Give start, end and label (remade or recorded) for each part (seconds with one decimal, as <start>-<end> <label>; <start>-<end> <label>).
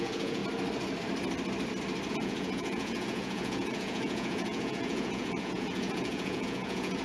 0.0-0.4 remade; 0.4-2.1 recorded; 2.1-7.0 remade